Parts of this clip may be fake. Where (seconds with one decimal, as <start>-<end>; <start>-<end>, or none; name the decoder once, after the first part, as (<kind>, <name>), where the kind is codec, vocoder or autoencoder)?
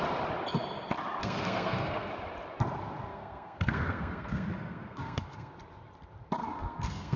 1.2-2.1 (codec, SNAC); 3.1-5.5; 6.4-7.2